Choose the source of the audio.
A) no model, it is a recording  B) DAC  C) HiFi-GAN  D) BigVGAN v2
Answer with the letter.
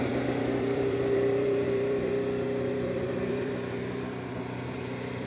D